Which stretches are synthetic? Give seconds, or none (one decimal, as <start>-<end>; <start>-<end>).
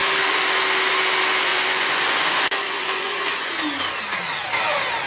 1.5-3.5